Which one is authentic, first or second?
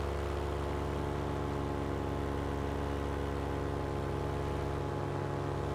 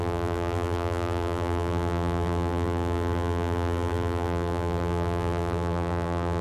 first